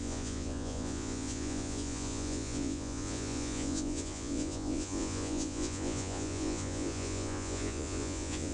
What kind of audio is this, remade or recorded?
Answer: remade